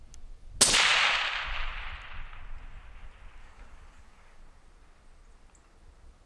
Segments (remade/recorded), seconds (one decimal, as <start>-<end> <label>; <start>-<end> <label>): 0.0-3.4 recorded; 3.4-4.4 remade; 4.4-6.3 recorded